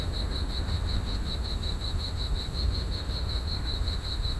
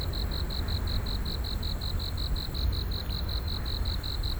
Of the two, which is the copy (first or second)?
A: first